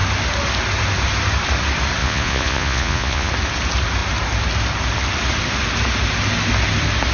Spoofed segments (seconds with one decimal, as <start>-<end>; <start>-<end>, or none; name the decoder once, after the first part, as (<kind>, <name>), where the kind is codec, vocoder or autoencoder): 2.0-3.3 (vocoder, Vocos)